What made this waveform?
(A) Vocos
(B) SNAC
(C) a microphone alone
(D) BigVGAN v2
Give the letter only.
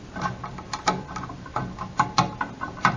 C